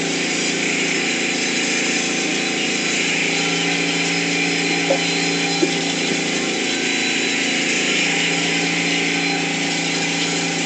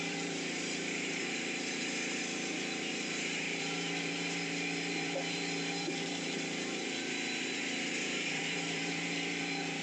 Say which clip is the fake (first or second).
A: second